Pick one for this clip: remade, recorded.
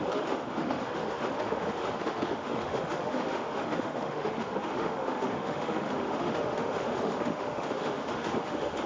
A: remade